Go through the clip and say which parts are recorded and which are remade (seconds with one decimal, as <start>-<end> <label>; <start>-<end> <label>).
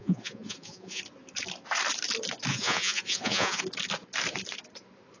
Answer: 0.0-1.0 remade; 1.0-2.5 recorded; 2.5-3.6 remade; 3.6-5.2 recorded